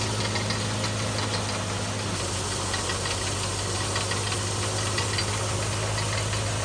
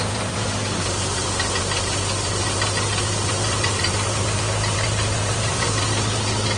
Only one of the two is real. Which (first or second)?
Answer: first